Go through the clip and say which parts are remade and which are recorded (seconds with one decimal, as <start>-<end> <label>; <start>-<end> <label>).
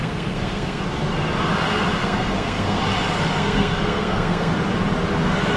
0.0-0.8 remade; 0.8-2.0 recorded; 2.0-2.8 remade; 2.8-3.4 recorded; 3.4-4.5 remade; 4.5-5.6 recorded